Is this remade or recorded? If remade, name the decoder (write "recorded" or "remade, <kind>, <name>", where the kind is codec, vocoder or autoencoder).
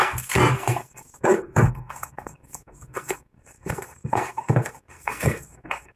remade, codec, SNAC